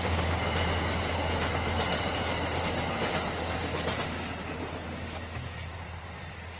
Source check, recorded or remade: recorded